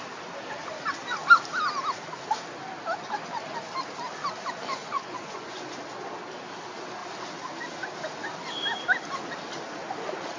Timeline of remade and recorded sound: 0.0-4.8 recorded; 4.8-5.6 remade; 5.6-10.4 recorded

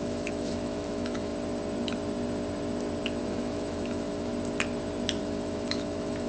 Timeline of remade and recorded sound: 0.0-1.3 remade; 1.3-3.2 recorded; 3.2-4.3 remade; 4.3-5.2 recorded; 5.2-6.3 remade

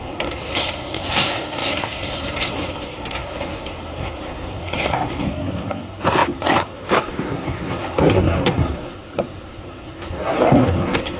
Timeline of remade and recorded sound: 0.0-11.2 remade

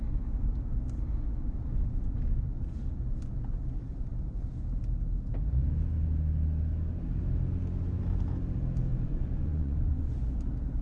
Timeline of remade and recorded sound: 0.0-8.9 recorded; 8.9-10.2 remade; 10.2-10.8 recorded

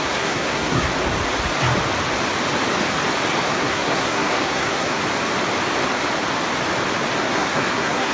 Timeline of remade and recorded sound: 0.0-0.9 remade; 0.9-3.4 recorded; 3.4-5.0 remade; 5.0-7.2 recorded; 7.2-8.1 remade

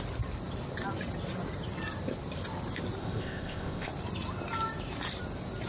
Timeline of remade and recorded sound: 0.0-3.0 recorded; 3.0-3.9 remade; 3.9-5.7 recorded